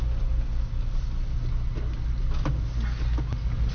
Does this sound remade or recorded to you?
recorded